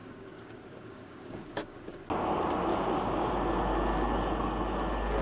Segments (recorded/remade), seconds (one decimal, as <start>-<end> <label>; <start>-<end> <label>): 0.0-1.9 remade; 1.9-2.7 recorded; 2.7-3.3 remade; 3.3-5.2 recorded